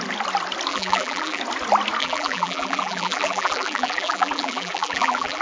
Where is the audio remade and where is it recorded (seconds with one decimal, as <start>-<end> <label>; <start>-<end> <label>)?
0.0-0.7 recorded; 0.7-1.4 remade; 1.4-2.0 recorded; 2.0-5.4 remade